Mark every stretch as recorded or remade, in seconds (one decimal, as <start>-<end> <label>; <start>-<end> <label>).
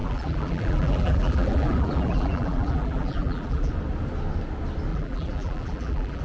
0.0-3.7 remade; 3.7-4.9 recorded; 4.9-6.2 remade